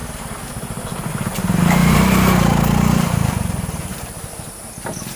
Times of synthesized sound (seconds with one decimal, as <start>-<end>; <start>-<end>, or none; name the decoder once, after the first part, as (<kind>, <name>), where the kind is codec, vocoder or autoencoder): 0.0-1.1 (vocoder, BigVGAN v2); 1.8-4.7